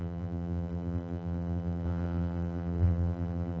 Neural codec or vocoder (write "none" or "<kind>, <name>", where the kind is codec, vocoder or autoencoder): vocoder, BigVGAN v2